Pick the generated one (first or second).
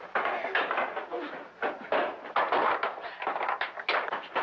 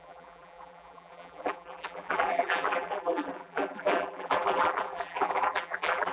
second